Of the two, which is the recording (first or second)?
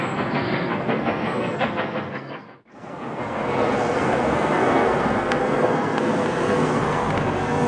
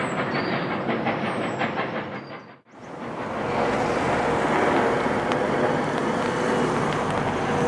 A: second